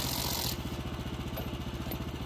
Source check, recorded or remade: recorded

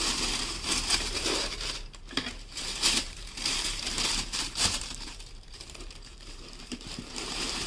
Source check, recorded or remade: remade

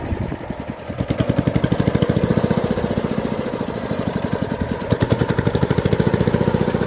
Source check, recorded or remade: remade